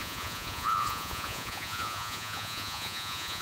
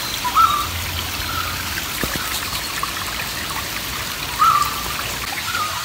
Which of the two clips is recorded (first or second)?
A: second